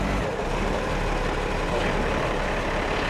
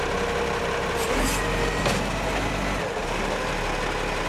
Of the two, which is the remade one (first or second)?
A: first